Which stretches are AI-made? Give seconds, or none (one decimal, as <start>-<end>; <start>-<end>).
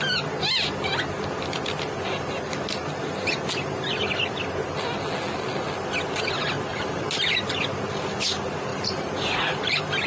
6.7-7.4; 8.7-9.6